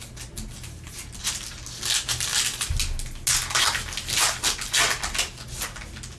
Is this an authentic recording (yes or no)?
yes